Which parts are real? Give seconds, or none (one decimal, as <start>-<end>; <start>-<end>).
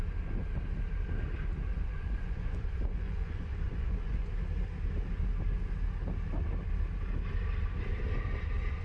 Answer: 0.0-1.7; 4.3-8.8